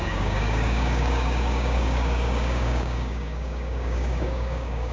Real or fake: fake